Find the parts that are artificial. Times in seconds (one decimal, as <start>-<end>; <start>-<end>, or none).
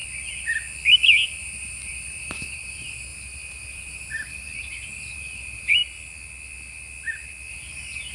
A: 1.3-3.1; 4.6-5.8; 7.5-8.1